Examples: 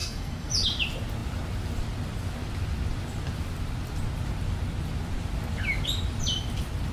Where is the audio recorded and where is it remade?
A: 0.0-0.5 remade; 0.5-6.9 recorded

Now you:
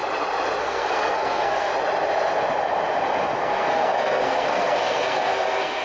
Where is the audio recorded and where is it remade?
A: 0.0-0.6 recorded; 0.6-1.7 remade; 1.7-3.4 recorded; 3.4-5.8 remade

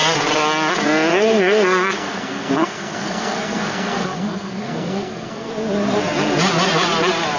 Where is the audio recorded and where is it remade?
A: 0.0-1.1 recorded; 1.1-5.5 remade; 5.5-7.4 recorded

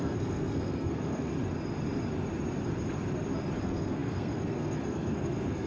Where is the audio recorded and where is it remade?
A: 0.0-1.3 remade; 1.3-3.6 recorded; 3.6-5.7 remade

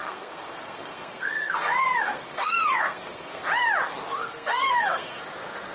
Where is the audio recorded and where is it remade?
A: 0.0-3.4 remade; 3.4-4.2 recorded; 4.2-5.2 remade; 5.2-5.7 recorded

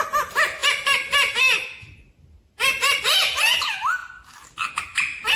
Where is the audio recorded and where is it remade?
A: 0.0-5.4 recorded

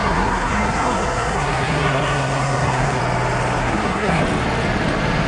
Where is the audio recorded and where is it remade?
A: 0.0-3.0 remade; 3.0-3.6 recorded; 3.6-4.2 remade; 4.2-5.3 recorded